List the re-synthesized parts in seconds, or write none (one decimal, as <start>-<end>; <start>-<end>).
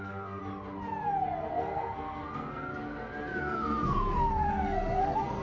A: 0.0-0.4; 1.5-2.7; 3.4-5.4